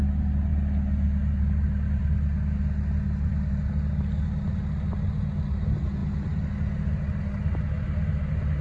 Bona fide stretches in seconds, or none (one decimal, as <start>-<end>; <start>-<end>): 0.0-8.6